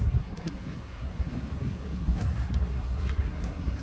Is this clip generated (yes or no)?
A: yes